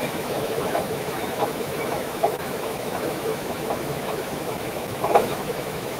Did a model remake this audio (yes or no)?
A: yes